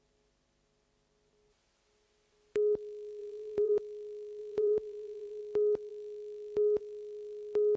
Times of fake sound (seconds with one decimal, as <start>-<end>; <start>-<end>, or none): 3.2-3.8; 4.4-5.4